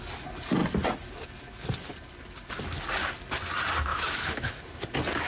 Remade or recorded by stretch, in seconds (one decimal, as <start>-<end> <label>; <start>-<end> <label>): 0.0-3.9 recorded; 3.9-4.6 remade; 4.6-5.3 recorded

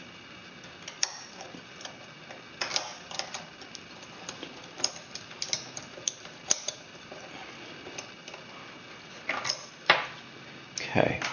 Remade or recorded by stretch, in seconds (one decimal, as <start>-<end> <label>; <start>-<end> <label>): 0.0-11.3 recorded

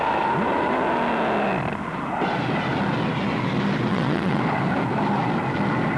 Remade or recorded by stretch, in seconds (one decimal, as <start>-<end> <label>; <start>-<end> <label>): 0.0-3.9 recorded; 3.9-4.4 remade; 4.4-6.0 recorded

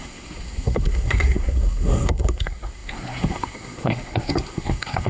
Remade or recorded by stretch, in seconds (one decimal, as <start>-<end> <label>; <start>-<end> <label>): 0.0-5.1 remade

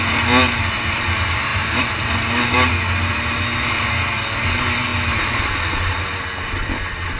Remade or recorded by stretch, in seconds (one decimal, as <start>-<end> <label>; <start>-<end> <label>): 0.0-7.2 recorded

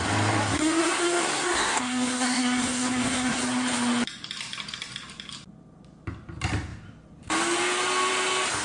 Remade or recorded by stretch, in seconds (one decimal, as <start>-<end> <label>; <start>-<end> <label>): 0.0-0.4 recorded; 0.4-3.4 remade; 3.4-8.6 recorded

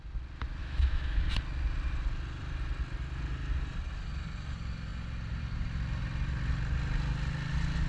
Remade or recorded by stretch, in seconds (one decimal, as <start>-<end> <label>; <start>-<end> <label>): 0.0-0.6 recorded; 0.6-1.2 remade; 1.2-7.9 recorded